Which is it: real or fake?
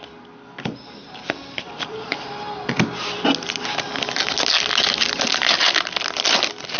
real